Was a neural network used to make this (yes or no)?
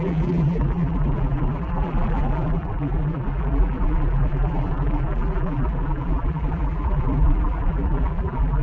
yes